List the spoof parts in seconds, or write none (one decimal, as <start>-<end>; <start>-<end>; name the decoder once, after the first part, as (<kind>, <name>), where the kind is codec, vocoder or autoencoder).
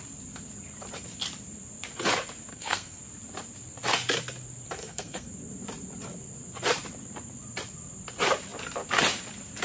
2.5-3.0 (codec, SNAC); 4.8-5.3